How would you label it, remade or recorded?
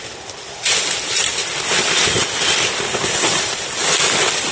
recorded